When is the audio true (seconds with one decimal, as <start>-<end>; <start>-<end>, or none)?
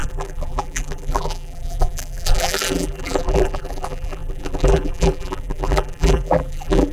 none